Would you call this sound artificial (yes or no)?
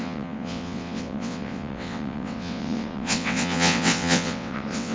yes